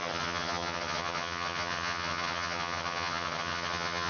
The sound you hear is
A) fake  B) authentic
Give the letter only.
A